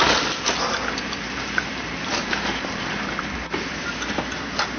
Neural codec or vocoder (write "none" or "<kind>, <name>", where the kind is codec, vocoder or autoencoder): vocoder, BigVGAN v2